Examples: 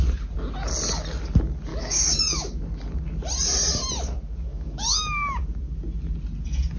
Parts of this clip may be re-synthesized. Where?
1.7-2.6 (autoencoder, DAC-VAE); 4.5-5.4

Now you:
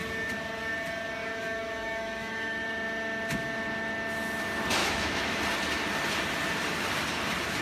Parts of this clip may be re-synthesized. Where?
1.2-2.6 (autoencoder, DAC-VAE); 4.8-5.4

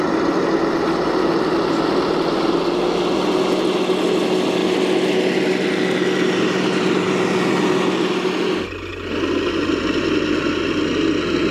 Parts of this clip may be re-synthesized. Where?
none

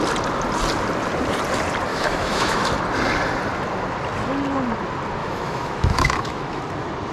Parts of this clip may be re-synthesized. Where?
1.9-2.7 (autoencoder, DAC-VAE); 5.2-6.6

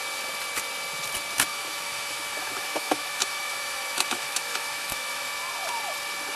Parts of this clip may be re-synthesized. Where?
1.5-5.3 (autoencoder, DAC-VAE)

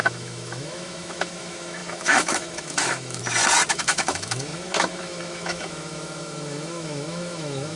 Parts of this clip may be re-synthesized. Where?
0.0-3.2 (autoencoder, DAC-VAE); 3.7-7.8

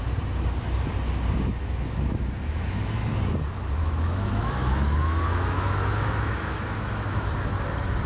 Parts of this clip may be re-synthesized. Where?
1.6-3.1 (autoencoder, DAC-VAE); 3.8-7.3